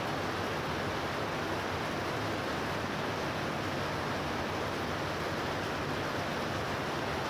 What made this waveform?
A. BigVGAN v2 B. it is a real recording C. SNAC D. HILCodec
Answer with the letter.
B